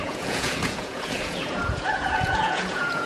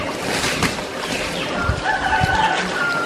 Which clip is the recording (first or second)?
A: second